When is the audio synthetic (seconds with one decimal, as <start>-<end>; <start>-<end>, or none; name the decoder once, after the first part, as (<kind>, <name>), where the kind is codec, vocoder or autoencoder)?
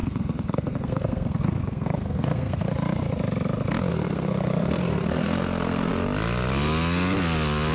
0.0-2.7 (codec, SNAC); 3.9-5.9